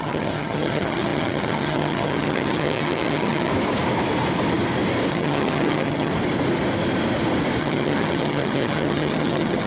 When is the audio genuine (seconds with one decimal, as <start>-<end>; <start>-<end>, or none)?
3.5-5.1; 6.1-7.6